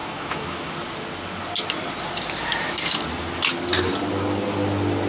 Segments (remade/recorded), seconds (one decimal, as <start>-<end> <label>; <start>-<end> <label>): 0.0-0.7 remade; 0.7-5.1 recorded